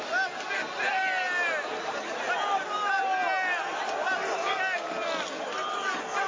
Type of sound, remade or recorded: recorded